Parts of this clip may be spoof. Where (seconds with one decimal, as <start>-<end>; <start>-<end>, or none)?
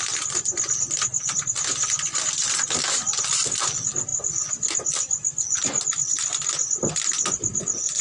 none